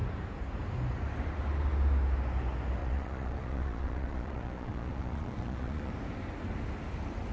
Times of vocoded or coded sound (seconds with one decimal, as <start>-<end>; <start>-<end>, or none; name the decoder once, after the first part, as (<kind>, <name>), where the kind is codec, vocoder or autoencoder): 2.8-5.9 (vocoder, Vocos)

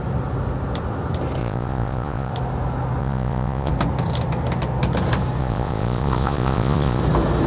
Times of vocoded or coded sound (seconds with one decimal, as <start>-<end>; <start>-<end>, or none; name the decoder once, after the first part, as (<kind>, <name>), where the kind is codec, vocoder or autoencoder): 1.4-2.3 (vocoder, Vocos); 3.0-3.7; 5.4-7.0

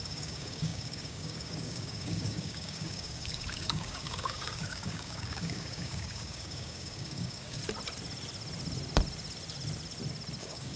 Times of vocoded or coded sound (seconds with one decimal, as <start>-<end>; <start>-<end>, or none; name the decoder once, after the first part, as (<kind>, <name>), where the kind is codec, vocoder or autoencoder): 0.0-7.6 (codec, DAC); 10.4-10.8

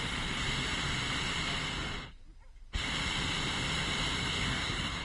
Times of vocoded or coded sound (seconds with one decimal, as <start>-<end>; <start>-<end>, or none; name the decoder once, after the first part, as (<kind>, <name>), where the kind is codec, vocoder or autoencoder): 4.3-5.0 (codec, SNAC)

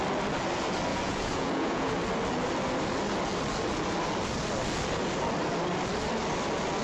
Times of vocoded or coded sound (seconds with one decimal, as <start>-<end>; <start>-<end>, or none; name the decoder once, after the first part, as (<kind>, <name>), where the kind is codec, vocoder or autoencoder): 0.9-1.9 (vocoder, Vocos)